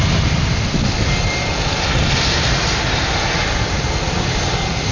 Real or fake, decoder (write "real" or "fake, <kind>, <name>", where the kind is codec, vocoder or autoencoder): real